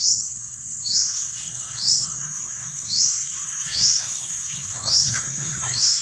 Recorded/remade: remade